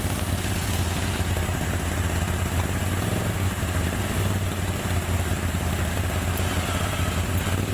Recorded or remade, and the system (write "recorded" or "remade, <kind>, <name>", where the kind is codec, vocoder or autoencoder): recorded